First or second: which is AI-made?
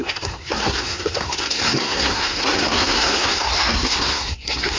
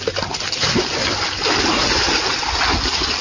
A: first